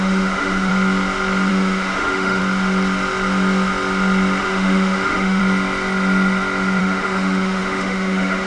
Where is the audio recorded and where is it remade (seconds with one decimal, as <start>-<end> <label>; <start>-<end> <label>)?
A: 0.0-0.7 remade; 0.7-1.5 recorded; 1.5-2.4 remade; 2.4-4.4 recorded; 4.4-5.4 remade; 5.4-6.8 recorded; 6.8-8.5 remade